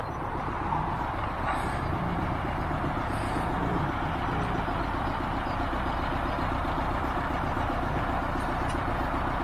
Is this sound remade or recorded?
remade